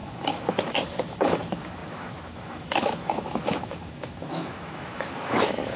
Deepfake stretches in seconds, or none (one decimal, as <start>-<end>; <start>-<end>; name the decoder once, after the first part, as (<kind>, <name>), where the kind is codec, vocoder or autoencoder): 0.0-5.8 (autoencoder, DAC-VAE)